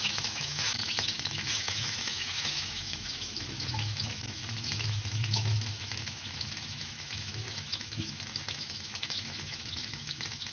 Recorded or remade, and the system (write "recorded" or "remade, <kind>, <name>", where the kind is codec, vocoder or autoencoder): remade, autoencoder, DAC-VAE